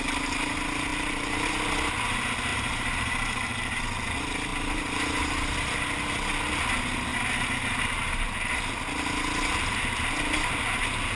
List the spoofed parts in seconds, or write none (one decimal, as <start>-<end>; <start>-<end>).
0.9-1.5; 2.5-3.8; 7.1-8.6